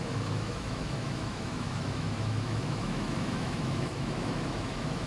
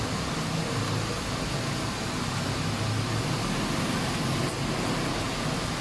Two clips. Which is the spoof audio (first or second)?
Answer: first